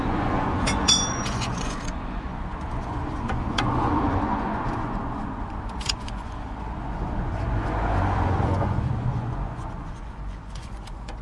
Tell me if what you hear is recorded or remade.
remade